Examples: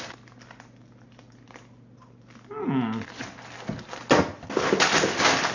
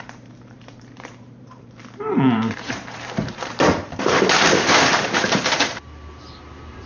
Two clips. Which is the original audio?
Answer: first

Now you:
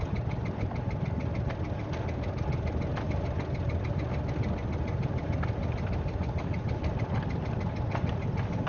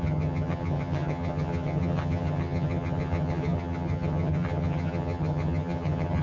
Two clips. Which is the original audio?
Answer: first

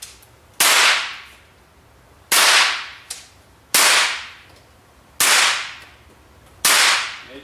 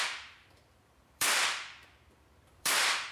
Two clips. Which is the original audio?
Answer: first